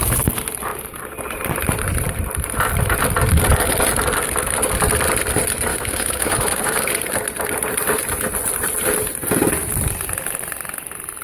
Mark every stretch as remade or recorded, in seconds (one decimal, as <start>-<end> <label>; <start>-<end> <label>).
0.0-5.7 recorded; 5.7-6.9 remade; 6.9-11.2 recorded